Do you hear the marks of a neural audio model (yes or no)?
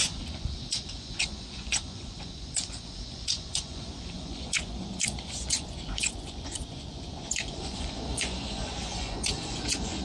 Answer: yes